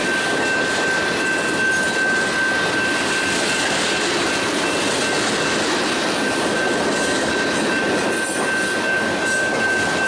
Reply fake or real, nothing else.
real